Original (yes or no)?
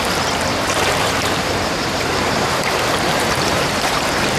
no